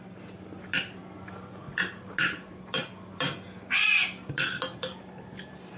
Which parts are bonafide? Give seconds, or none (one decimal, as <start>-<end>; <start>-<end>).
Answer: 0.0-5.8